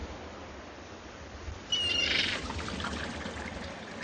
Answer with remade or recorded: remade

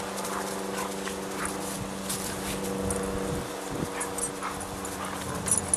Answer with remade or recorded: recorded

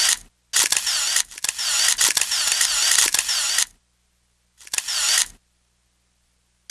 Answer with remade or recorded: recorded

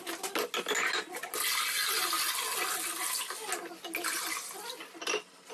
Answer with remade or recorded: recorded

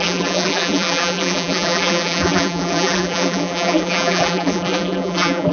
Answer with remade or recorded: remade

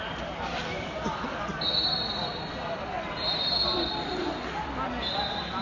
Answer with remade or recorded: remade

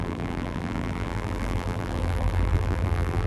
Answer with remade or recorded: remade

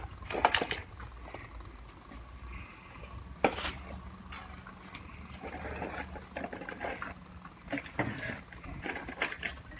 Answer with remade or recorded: recorded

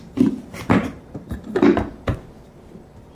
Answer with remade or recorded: recorded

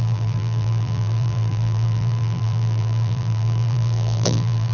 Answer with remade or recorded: remade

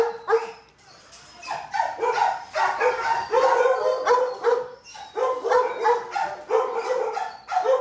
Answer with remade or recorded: recorded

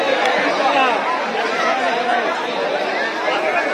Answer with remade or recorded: recorded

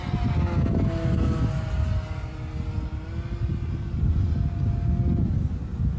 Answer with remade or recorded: recorded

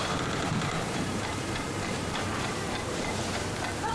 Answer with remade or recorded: remade